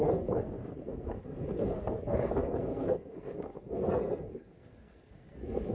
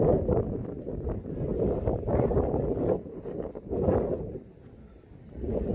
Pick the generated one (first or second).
first